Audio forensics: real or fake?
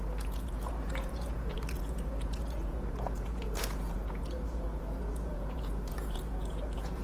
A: fake